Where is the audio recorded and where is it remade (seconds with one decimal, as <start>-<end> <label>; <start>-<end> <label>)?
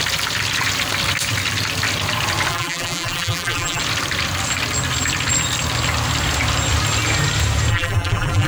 0.0-2.5 recorded; 2.5-3.8 remade; 3.8-7.7 recorded; 7.7-8.5 remade